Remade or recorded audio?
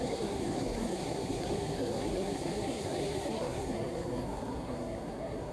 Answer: remade